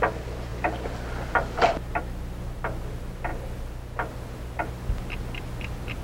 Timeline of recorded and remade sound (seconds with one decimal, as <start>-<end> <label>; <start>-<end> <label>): 0.0-6.0 recorded